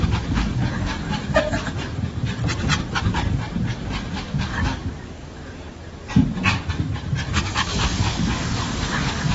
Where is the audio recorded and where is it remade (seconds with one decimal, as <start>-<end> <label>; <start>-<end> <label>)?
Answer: 0.0-0.6 remade; 0.6-4.1 recorded; 4.1-5.4 remade; 5.4-7.3 recorded; 7.3-9.3 remade